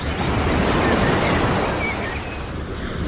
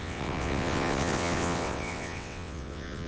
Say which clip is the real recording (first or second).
first